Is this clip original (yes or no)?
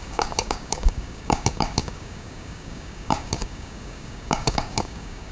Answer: no